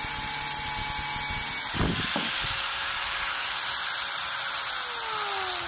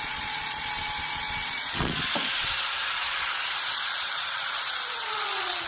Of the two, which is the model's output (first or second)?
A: second